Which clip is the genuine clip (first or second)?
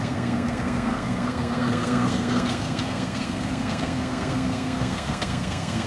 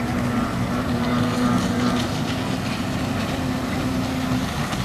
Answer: second